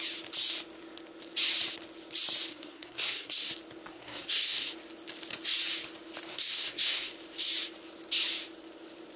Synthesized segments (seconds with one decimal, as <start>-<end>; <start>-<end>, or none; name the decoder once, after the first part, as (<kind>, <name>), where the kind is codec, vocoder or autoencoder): 2.5-3.5 (codec, SNAC); 3.9-4.7; 6.3-7.1